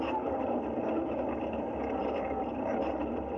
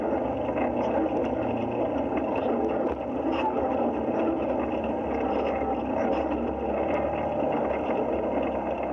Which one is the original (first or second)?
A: second